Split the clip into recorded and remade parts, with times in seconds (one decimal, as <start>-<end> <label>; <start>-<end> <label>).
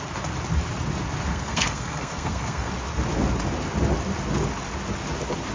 0.0-1.3 recorded; 1.3-2.7 remade; 2.7-5.5 recorded